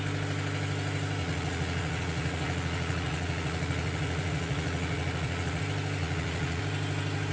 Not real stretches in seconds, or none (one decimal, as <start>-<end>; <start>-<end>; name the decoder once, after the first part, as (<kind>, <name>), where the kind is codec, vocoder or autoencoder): 1.2-5.6 (vocoder, Vocos); 6.0-6.6